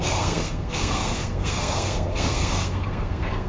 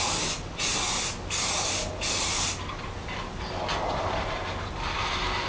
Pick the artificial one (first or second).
first